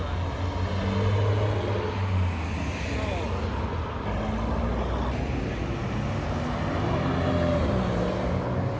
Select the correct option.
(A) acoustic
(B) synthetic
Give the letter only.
A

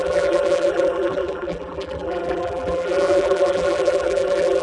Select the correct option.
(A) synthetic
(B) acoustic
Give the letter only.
A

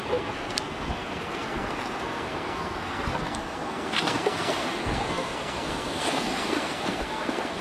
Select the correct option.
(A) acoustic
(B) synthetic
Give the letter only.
B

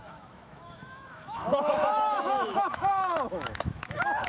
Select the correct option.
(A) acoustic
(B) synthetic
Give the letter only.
B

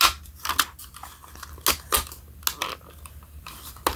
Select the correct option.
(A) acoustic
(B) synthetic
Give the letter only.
A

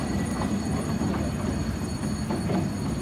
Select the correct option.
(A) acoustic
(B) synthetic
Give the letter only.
A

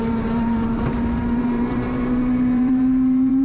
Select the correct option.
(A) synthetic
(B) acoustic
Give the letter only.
A